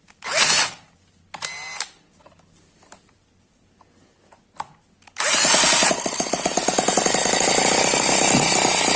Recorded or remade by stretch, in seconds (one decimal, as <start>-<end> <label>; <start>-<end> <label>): 0.0-9.0 recorded